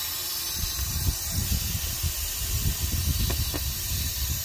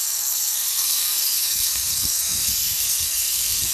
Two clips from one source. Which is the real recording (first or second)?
first